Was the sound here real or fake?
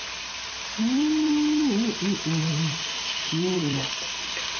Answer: fake